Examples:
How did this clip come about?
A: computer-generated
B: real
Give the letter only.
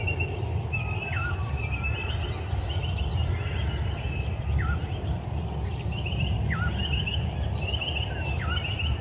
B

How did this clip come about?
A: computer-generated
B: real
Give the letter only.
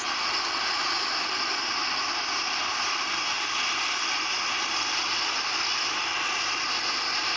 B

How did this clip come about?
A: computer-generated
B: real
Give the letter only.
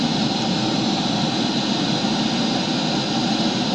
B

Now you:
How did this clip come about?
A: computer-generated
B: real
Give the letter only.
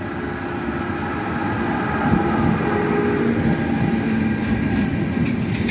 B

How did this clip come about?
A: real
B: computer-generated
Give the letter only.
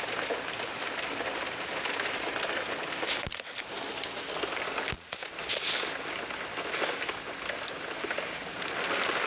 A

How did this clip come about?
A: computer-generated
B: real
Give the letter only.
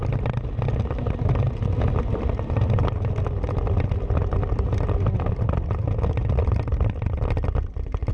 B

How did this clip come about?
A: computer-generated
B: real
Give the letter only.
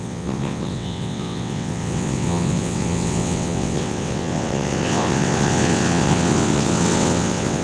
A